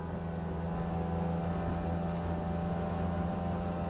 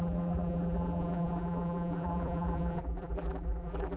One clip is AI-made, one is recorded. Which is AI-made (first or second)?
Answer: second